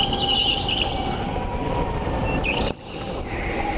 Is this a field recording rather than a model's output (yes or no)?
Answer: yes